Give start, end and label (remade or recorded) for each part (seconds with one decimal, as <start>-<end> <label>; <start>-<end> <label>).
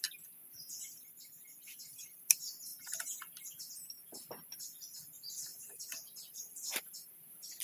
0.0-7.6 recorded